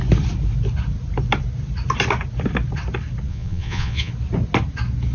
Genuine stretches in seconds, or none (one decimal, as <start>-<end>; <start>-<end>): 0.0-3.3; 4.1-5.1